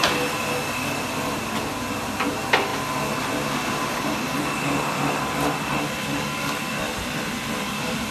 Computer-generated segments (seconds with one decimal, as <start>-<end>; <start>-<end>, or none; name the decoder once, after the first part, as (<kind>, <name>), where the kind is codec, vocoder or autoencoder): 6.1-6.8 (codec, DAC)